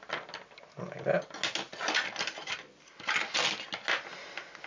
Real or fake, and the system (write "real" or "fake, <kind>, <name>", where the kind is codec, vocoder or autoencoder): real